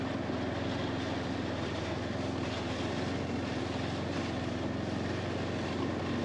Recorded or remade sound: recorded